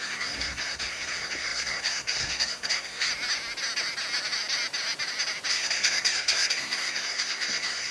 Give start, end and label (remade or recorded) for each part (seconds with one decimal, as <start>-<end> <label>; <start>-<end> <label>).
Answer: 0.0-3.1 remade; 3.1-5.5 recorded; 5.5-7.9 remade